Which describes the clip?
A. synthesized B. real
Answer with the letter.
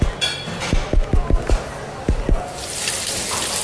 B